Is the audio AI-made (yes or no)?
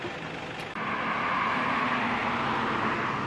no